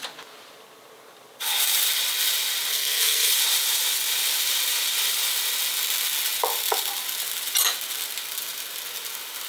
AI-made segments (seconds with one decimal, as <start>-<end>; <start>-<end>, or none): 2.7-3.3

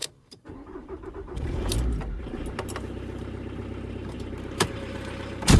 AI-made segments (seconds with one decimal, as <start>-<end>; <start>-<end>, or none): 0.0-1.7; 3.9-5.6

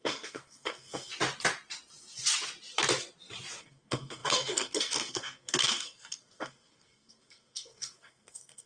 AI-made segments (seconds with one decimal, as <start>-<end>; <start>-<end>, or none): 0.0-1.1; 3.6-8.7

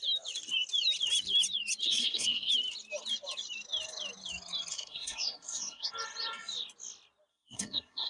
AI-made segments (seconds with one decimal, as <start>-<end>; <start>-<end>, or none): 1.8-2.5; 4.7-5.9; 7.3-8.1

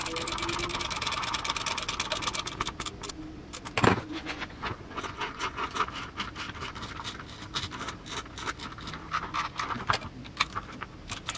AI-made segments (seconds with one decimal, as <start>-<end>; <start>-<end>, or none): 3.9-5.8

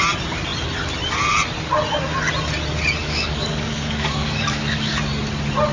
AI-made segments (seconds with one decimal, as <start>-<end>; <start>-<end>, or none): 3.0-5.0